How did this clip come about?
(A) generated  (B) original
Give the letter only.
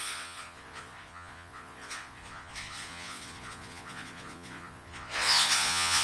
A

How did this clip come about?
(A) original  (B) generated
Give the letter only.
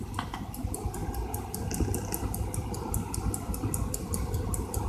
A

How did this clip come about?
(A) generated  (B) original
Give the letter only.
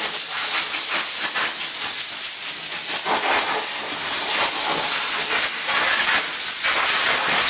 B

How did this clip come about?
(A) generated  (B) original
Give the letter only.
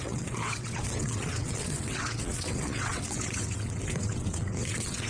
A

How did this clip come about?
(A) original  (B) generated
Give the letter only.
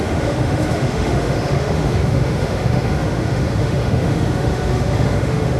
B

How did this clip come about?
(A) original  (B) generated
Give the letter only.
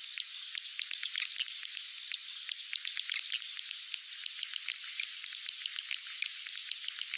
A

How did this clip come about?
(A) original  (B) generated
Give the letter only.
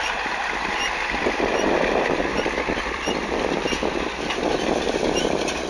B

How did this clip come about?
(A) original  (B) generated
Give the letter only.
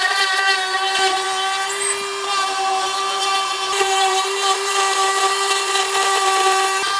B